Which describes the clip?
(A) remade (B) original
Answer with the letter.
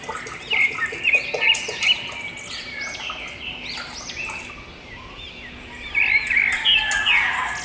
B